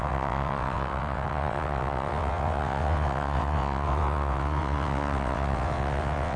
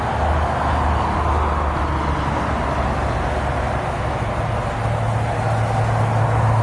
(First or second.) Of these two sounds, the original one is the second